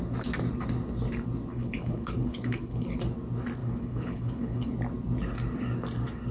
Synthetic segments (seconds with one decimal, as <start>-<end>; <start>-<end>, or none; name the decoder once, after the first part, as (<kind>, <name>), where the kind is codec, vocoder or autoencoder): 1.5-3.0 (codec, HILCodec); 3.6-4.7